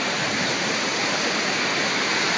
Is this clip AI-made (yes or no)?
yes